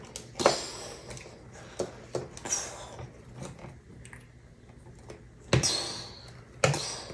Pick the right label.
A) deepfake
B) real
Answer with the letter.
B